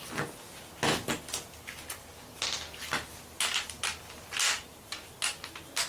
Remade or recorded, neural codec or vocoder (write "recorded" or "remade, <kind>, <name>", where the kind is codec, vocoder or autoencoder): recorded